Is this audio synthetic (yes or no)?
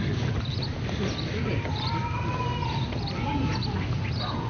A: no